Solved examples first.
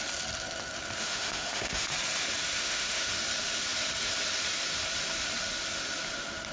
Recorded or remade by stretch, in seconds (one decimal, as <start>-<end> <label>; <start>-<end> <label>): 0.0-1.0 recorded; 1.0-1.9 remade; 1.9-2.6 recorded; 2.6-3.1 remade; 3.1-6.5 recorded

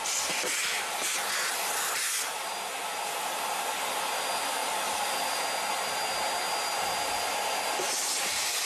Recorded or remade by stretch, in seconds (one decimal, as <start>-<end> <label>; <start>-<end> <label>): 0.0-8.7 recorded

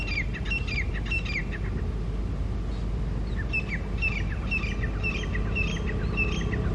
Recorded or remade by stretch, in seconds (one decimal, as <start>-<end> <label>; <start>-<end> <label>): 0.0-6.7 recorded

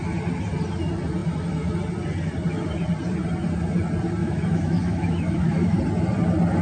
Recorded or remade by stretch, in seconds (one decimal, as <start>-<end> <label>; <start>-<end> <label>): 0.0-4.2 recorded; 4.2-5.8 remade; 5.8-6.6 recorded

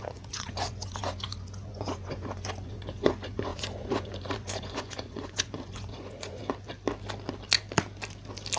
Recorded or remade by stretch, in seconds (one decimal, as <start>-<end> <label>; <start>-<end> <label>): 0.0-6.4 remade; 6.4-8.6 recorded